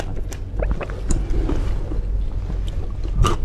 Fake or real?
real